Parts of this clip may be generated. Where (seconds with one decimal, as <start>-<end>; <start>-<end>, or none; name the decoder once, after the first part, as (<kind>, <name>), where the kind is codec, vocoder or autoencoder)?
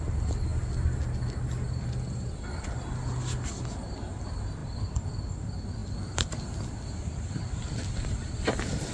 none